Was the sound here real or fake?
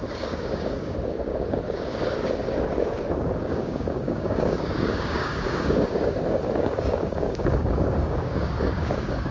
fake